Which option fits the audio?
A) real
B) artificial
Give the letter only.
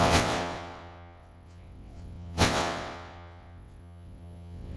B